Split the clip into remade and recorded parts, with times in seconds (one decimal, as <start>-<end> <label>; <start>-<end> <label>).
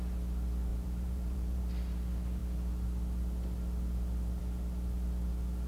0.0-0.7 recorded; 0.7-1.6 remade; 1.6-5.7 recorded